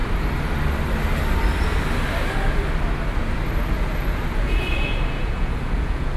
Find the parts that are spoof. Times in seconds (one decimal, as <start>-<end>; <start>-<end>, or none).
3.7-6.2